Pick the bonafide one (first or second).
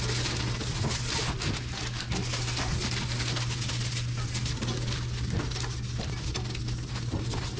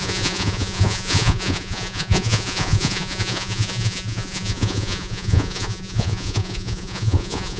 first